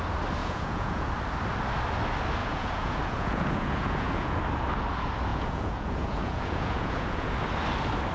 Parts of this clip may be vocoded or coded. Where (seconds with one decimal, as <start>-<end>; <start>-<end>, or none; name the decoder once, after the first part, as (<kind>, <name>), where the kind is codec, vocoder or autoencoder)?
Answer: 0.4-1.1 (vocoder, Vocos); 2.4-4.4; 5.3-7.3